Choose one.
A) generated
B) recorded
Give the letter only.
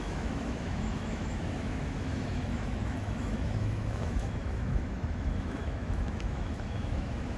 A